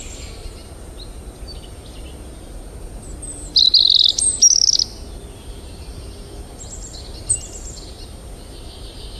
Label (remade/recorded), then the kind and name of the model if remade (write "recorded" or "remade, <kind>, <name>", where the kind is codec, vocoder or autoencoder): recorded